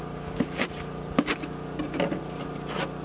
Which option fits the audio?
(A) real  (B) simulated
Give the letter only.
A